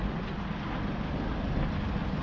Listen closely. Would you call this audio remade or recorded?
recorded